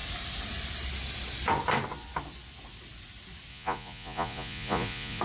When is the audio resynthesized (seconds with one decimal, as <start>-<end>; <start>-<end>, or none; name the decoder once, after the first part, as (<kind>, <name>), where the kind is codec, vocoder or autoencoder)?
3.5-5.2 (vocoder, Vocos)